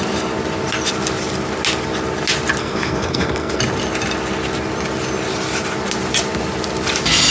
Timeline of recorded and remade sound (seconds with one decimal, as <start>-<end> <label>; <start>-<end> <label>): 0.0-2.6 recorded; 2.6-3.6 remade; 3.6-7.3 recorded